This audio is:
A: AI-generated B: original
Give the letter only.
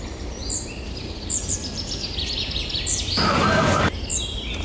A